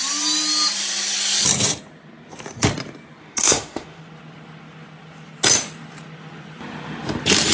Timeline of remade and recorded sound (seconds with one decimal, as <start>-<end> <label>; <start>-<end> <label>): 0.0-3.2 recorded; 3.2-4.0 remade; 4.0-7.5 recorded